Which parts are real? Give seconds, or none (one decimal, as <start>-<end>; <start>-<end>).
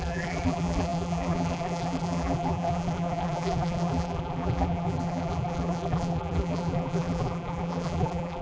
none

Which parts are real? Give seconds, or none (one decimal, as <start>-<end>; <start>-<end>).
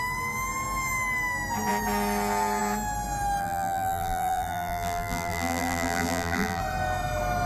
0.0-3.4; 6.6-7.5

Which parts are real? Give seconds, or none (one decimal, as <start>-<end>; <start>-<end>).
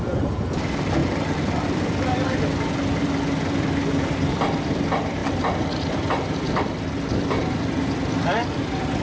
none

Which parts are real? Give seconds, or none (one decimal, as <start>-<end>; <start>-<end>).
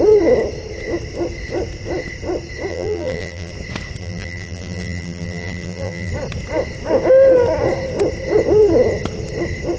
0.0-2.7; 3.5-4.0; 6.1-9.8